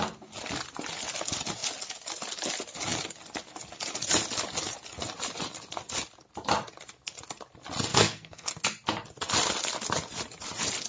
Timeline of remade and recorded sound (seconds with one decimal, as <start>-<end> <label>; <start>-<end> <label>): 0.0-7.9 recorded; 7.9-8.5 remade; 8.5-10.9 recorded